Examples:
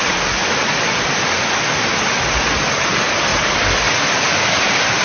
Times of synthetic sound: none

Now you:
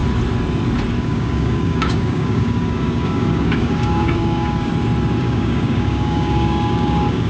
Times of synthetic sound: 1.0-4.7 (codec, DAC); 5.2-7.3

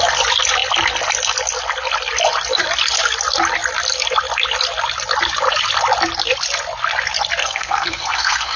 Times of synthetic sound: 7.4-8.6 (codec, SNAC)

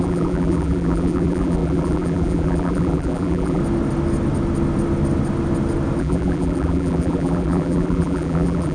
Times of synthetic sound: 0.0-3.6 (vocoder, BigVGAN v2); 6.0-8.7